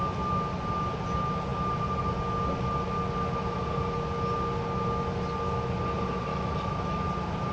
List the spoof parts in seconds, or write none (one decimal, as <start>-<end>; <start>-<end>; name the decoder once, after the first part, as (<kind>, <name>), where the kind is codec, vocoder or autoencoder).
6.3-7.1 (autoencoder, DAC-VAE)